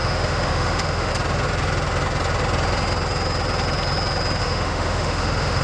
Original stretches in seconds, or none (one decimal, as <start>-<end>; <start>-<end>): 1.1-4.4